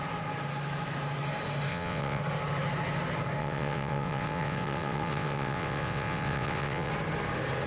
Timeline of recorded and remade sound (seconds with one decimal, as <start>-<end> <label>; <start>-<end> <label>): 0.0-1.7 recorded; 1.7-2.2 remade; 2.2-3.4 recorded; 3.4-6.9 remade; 6.9-7.7 recorded